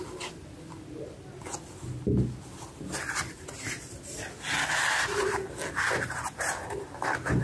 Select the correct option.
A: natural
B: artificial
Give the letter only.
A